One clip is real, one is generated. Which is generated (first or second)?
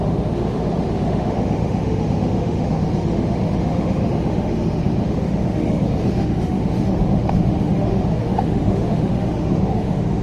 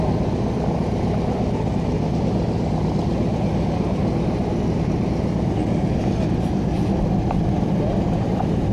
first